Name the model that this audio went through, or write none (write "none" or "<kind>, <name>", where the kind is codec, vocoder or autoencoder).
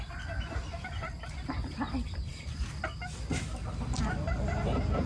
vocoder, BigVGAN v2